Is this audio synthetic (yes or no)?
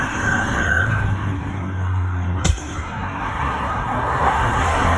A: yes